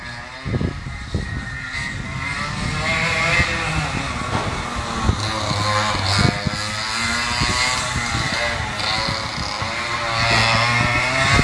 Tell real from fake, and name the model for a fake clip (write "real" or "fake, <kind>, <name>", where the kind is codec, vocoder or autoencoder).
real